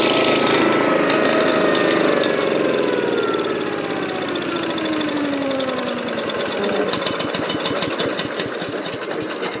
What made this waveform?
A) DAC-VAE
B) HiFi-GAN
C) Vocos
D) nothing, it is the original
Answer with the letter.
D